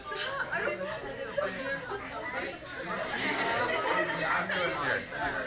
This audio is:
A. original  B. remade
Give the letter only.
A